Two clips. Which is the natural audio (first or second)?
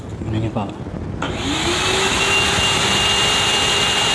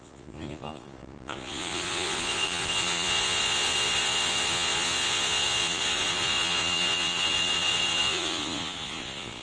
first